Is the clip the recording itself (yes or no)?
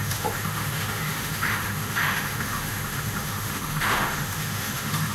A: no